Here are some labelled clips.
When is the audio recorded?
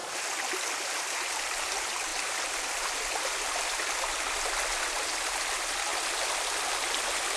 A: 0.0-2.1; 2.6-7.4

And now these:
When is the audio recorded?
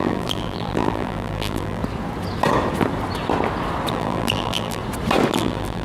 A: 1.8-3.9; 4.8-5.3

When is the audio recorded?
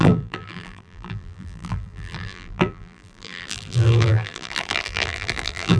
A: none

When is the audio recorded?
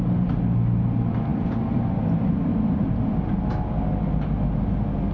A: 0.0-1.3; 2.1-2.5; 3.0-5.1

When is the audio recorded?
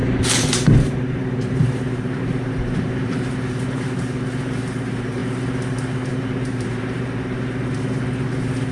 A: 5.2-6.1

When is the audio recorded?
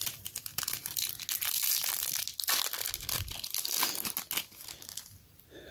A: 0.0-0.5; 1.1-5.7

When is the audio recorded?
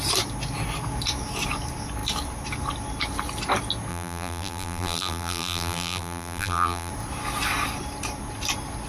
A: 0.0-3.9; 6.9-8.9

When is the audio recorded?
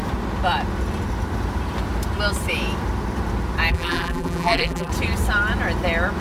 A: 0.0-3.7; 4.9-6.2